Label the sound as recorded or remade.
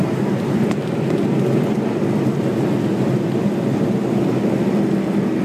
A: recorded